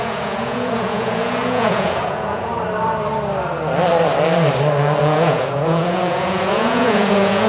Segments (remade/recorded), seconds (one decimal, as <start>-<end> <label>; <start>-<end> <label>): 0.0-2.5 remade; 2.5-5.0 recorded; 5.0-7.5 remade